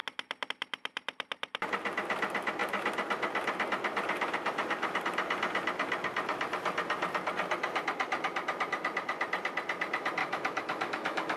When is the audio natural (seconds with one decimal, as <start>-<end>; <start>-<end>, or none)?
0.0-10.2